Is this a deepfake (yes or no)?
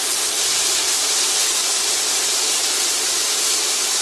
no